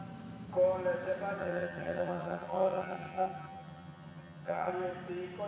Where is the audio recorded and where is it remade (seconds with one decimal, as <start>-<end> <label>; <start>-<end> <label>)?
0.0-1.4 recorded; 1.4-4.7 remade; 4.7-5.5 recorded